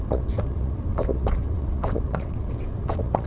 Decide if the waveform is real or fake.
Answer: fake